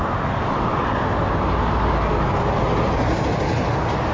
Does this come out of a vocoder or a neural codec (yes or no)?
no